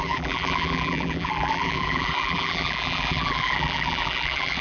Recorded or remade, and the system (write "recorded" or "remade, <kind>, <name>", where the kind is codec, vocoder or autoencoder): remade, vocoder, BigVGAN v2